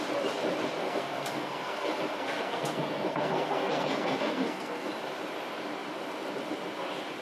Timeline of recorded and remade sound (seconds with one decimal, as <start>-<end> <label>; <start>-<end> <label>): 0.0-0.8 recorded; 0.8-4.9 remade; 4.9-7.2 recorded